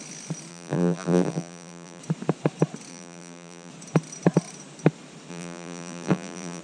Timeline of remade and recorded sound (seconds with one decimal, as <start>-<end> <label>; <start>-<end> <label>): 0.0-0.5 recorded; 0.5-2.0 remade; 2.0-2.9 recorded; 2.9-3.7 remade; 3.7-5.3 recorded; 5.3-6.6 remade